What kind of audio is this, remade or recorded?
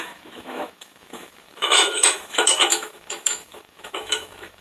remade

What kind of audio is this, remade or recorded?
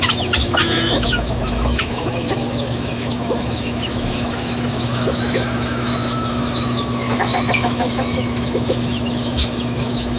remade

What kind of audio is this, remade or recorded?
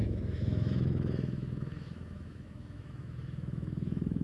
remade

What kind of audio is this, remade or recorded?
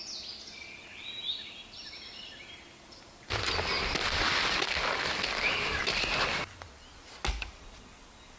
recorded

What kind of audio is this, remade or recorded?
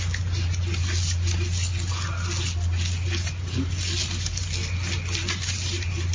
recorded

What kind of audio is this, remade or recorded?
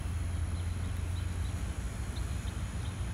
recorded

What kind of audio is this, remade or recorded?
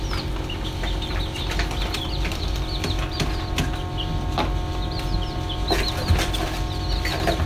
recorded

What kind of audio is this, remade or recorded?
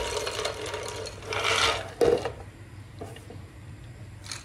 recorded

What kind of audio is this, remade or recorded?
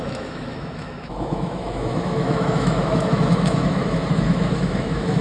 remade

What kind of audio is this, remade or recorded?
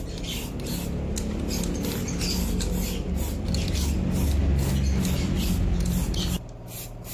recorded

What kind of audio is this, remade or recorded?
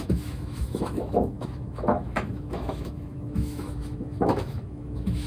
remade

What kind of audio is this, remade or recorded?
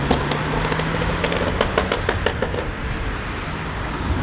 recorded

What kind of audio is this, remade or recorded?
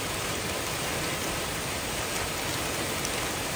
recorded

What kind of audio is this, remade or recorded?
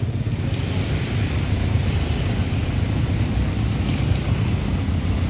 recorded